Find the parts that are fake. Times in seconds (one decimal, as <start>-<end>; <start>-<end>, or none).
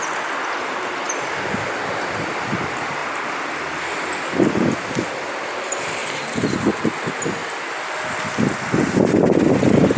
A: none